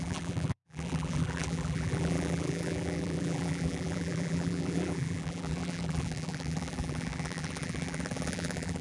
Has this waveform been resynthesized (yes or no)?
yes